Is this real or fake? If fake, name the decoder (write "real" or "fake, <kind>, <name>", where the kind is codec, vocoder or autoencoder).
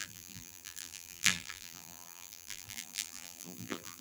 fake, vocoder, BigVGAN v2